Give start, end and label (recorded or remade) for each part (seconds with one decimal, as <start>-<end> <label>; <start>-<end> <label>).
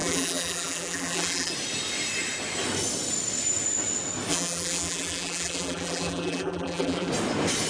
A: 0.0-1.5 remade; 1.5-4.3 recorded; 4.3-7.1 remade; 7.1-7.7 recorded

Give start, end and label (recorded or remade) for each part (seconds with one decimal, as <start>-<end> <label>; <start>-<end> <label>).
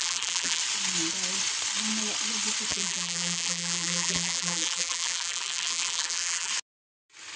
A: 0.0-0.6 remade; 0.6-2.7 recorded; 2.7-6.5 remade; 6.5-7.4 recorded